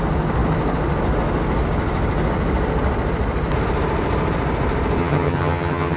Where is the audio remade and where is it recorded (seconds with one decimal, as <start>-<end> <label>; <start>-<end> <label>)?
0.0-5.0 recorded; 5.0-6.0 remade